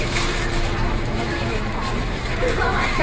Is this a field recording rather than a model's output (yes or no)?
no